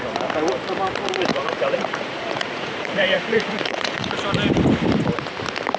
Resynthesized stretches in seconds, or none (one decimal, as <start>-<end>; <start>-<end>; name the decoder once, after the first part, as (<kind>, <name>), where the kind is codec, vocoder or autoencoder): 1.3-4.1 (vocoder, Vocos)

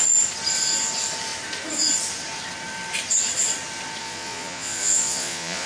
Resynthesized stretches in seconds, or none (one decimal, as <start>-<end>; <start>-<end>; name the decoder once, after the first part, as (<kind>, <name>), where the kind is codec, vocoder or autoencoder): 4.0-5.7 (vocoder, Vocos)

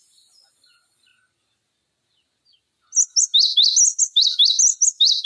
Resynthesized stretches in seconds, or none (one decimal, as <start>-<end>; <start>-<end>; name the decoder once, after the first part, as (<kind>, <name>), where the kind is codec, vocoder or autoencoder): none